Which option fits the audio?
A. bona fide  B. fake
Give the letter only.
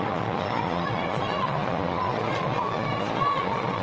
B